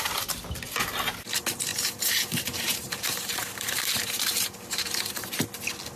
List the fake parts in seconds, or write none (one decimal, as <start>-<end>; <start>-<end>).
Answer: 1.7-5.3